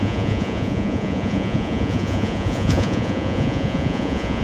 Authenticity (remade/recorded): remade